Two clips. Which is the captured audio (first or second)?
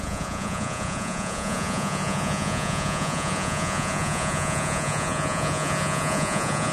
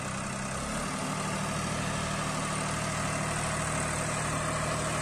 second